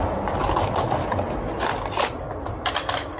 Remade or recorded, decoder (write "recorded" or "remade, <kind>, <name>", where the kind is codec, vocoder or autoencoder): recorded